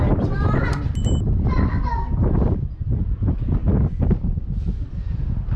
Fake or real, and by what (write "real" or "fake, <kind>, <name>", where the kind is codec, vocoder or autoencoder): real